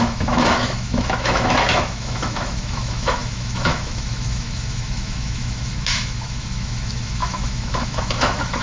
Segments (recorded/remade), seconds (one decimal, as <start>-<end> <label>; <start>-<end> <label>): 0.0-8.6 remade